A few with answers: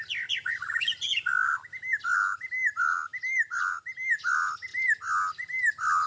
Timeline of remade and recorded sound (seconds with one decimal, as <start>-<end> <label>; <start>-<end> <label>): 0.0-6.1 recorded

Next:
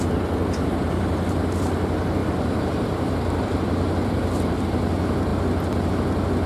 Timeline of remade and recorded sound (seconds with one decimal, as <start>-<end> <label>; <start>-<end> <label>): 0.0-2.2 recorded; 2.2-4.6 remade; 4.6-6.5 recorded

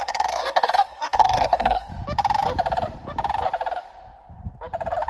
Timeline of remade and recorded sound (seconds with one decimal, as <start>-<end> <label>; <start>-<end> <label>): 0.0-1.9 remade; 1.9-5.1 recorded

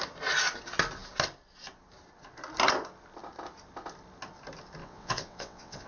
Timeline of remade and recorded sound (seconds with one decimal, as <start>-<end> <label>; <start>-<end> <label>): 0.0-4.8 recorded; 4.8-5.9 remade

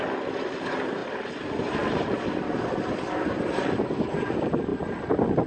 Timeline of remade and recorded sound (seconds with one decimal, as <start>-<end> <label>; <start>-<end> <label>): 0.0-5.5 recorded